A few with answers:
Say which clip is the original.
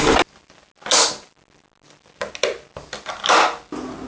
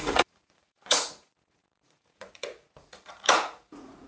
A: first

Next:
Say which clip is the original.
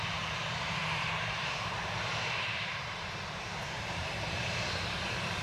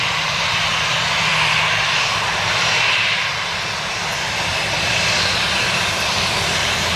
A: second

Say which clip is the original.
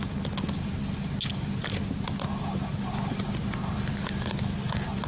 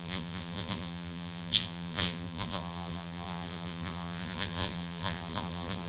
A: first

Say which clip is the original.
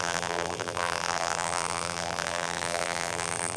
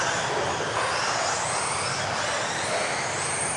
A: second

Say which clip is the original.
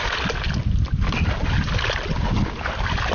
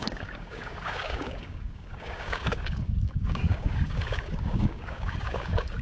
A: first